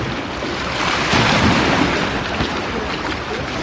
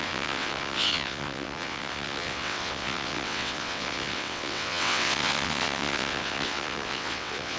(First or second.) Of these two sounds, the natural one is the first